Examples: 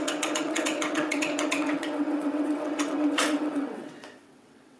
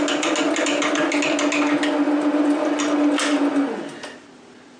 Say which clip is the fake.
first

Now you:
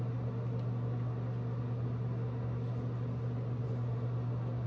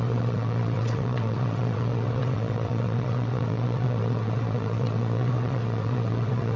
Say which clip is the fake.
second